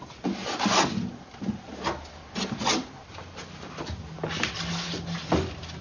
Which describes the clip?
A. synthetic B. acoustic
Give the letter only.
B